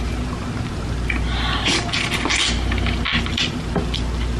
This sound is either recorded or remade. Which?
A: recorded